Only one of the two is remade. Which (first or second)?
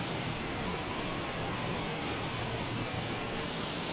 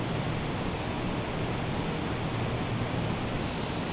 first